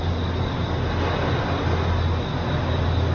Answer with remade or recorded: recorded